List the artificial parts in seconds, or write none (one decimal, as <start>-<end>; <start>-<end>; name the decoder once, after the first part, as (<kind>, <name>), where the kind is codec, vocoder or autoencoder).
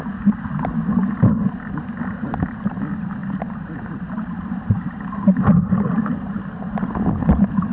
3.2-5.0 (vocoder, BigVGAN v2)